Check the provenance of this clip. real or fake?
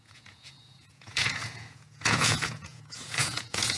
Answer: fake